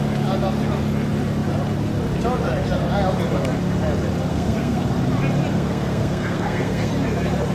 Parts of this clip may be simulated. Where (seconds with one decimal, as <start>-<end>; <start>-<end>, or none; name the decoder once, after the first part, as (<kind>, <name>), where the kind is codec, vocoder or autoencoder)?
4.3-4.8 (codec, SNAC); 5.5-6.9